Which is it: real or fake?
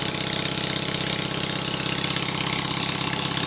real